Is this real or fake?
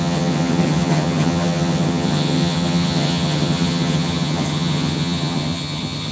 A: fake